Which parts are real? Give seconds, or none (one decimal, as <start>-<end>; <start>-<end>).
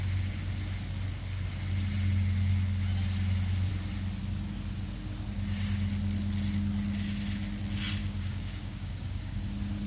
0.0-8.0; 9.4-9.9